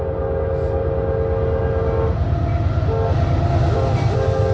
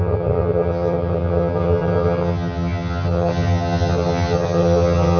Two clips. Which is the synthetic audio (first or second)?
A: second